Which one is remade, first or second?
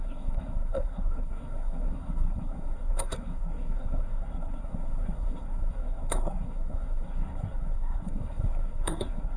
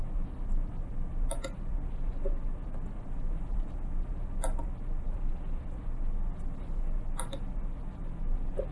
first